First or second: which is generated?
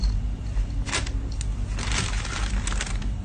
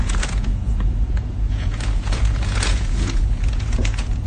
second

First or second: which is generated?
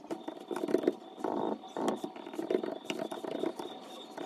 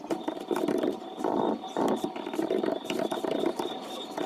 second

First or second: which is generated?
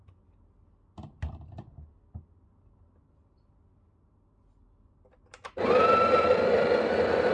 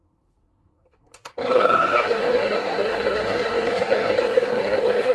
second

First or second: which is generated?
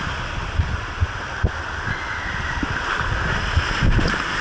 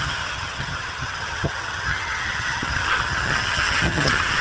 second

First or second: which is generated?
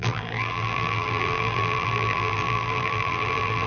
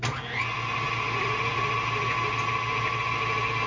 first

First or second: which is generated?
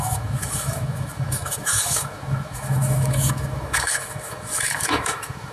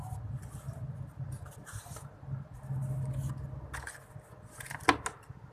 first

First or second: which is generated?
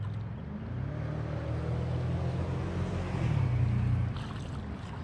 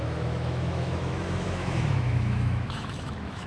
second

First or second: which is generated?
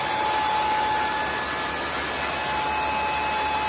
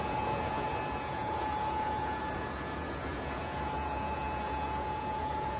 second